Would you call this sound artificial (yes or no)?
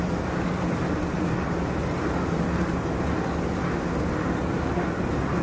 no